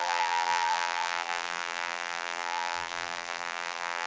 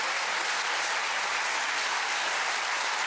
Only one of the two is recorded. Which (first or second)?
second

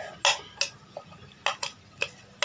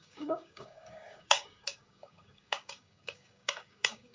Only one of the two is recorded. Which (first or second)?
first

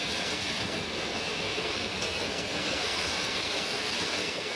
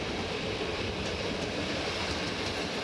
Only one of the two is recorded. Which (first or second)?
second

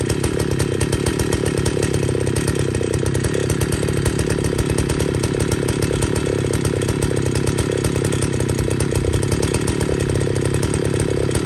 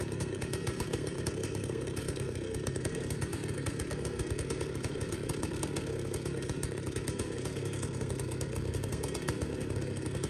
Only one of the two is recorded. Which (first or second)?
first